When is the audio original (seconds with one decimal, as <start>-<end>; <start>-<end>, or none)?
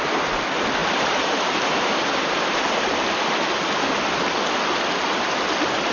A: 0.0-0.8; 2.8-5.9